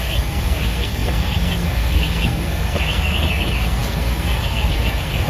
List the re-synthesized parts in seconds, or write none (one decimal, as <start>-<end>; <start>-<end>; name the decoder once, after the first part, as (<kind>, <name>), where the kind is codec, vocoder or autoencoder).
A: 0.0-5.3 (codec, SNAC)